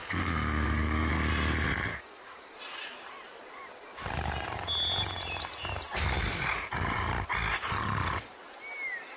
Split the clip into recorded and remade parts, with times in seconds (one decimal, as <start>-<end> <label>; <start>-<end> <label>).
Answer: 0.0-1.1 remade; 1.1-1.9 recorded; 1.9-2.5 remade; 2.5-9.2 recorded